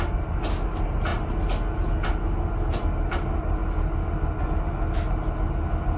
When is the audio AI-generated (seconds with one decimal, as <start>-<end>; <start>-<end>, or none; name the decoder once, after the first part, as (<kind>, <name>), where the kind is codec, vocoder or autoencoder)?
none

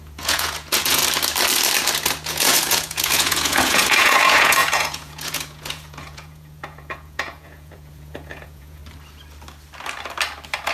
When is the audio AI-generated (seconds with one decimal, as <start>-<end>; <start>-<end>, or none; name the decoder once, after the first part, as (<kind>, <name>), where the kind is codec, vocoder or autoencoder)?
0.0-1.0 (vocoder, Vocos); 2.3-8.8

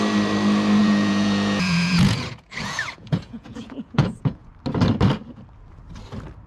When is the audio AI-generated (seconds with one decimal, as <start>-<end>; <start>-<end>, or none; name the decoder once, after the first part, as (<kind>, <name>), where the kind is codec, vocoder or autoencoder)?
0.8-4.5 (vocoder, Vocos)

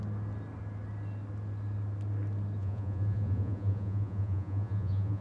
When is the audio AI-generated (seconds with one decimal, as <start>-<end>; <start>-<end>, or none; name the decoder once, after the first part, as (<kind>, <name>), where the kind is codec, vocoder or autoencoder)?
2.6-5.2 (vocoder, Vocos)

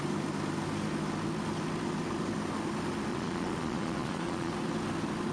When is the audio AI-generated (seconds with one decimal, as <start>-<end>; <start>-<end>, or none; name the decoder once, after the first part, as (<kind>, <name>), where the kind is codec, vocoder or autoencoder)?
3.1-4.5 (vocoder, Vocos)

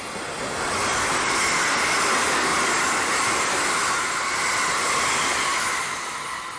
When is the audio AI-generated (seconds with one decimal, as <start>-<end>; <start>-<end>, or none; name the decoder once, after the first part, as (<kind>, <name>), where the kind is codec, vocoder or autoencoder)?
none